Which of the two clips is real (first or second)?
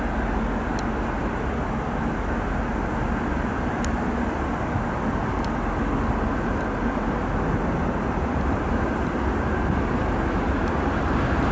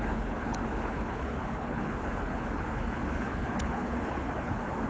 first